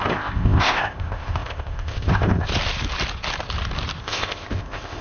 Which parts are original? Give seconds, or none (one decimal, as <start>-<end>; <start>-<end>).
2.5-4.0